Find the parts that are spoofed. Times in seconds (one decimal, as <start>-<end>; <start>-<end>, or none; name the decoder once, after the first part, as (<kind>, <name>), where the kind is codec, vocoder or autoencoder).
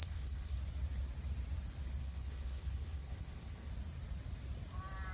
0.0-0.6 (codec, HILCodec); 2.0-3.7